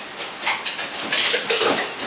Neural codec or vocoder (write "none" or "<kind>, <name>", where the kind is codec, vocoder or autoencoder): none